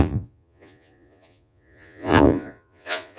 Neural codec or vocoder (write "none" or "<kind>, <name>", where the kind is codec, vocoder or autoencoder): vocoder, Vocos